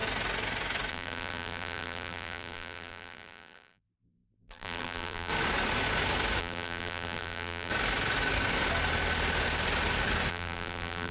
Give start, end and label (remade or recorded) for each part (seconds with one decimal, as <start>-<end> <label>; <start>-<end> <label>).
0.0-0.9 recorded; 0.9-5.3 remade; 5.3-6.4 recorded; 6.4-7.7 remade; 7.7-10.3 recorded; 10.3-11.1 remade

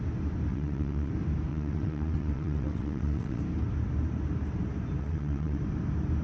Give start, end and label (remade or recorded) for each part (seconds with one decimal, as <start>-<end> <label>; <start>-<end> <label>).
0.0-0.5 recorded; 0.5-1.1 remade; 1.1-1.5 recorded; 1.5-3.4 remade; 3.4-5.0 recorded; 5.0-5.6 remade; 5.6-6.2 recorded

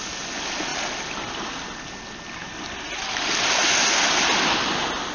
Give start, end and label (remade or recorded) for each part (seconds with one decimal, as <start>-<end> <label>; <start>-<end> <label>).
0.0-5.1 recorded

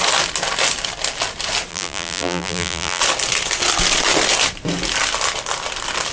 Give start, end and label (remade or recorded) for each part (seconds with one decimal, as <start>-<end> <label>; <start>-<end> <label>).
0.0-1.7 recorded; 1.7-3.0 remade; 3.0-6.1 recorded